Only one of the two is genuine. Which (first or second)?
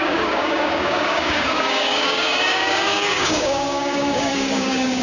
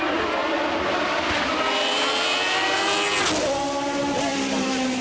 second